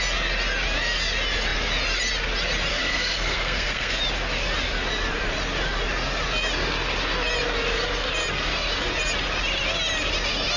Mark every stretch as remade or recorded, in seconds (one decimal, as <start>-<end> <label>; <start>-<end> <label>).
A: 0.0-2.7 recorded; 2.7-4.0 remade; 4.0-10.6 recorded